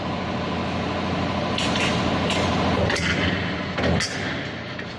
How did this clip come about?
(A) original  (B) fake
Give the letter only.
A